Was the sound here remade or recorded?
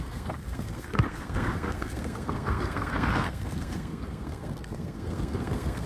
remade